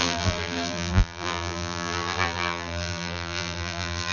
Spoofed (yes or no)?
yes